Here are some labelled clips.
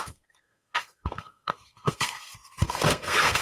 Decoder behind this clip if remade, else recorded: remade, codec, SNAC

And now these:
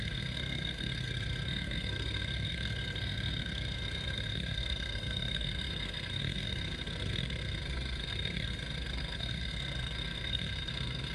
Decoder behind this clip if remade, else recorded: remade, codec, SNAC